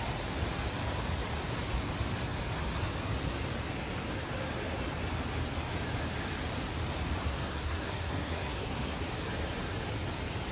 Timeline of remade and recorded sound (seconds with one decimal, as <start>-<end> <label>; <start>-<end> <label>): 0.0-7.2 recorded; 7.2-9.0 remade; 9.0-10.5 recorded